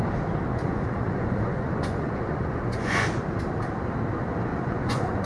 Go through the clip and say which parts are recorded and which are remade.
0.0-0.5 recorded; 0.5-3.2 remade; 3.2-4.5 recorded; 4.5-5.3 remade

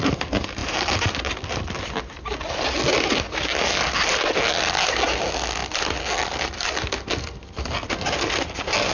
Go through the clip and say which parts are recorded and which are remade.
0.0-8.9 recorded

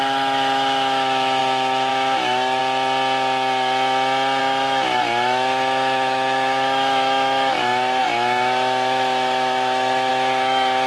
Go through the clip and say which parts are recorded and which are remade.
0.0-2.6 remade; 2.6-4.4 recorded; 4.4-10.9 remade